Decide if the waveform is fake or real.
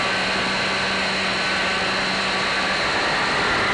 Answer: real